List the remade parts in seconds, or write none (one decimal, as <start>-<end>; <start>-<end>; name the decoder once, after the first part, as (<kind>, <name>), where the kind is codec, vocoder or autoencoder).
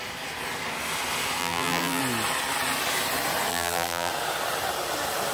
1.4-2.0 (vocoder, BigVGAN v2); 3.5-4.1